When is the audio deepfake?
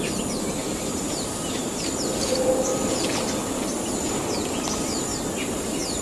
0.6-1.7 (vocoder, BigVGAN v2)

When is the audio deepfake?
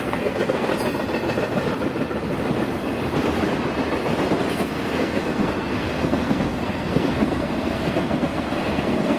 0.0-0.7 (codec, SNAC); 4.5-9.2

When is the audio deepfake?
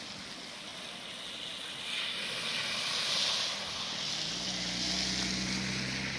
none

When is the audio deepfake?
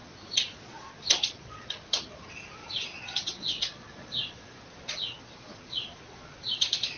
0.0-1.8 (vocoder, Vocos); 2.6-7.0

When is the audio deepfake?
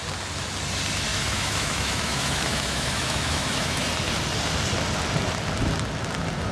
1.1-3.9 (autoencoder, DAC-VAE)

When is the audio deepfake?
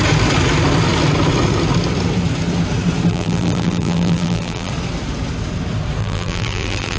3.1-4.7 (vocoder, BigVGAN v2); 6.0-7.0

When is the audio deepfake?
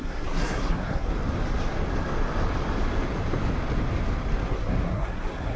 0.0-1.1 (codec, SNAC); 4.5-5.6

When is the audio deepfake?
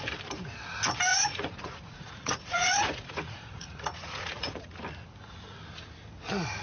1.1-4.8 (vocoder, Vocos)